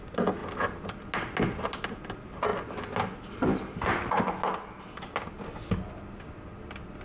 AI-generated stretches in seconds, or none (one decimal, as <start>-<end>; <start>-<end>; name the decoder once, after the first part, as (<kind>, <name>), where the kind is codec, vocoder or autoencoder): none